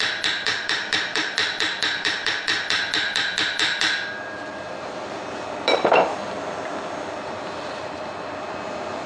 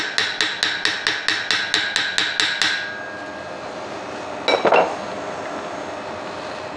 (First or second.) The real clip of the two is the second